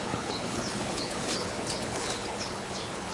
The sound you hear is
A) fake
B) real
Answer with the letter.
A